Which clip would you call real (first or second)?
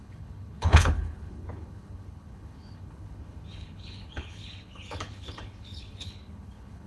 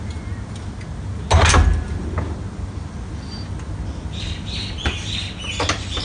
second